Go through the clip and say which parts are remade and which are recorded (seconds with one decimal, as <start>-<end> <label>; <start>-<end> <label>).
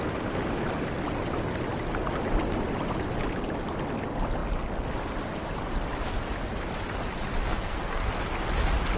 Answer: 0.0-7.5 recorded; 7.5-8.1 remade; 8.1-9.0 recorded